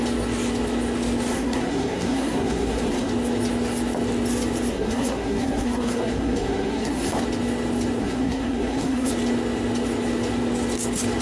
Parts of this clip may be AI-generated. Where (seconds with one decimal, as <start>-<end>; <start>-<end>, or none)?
1.3-3.1; 4.7-7.2; 8.0-9.1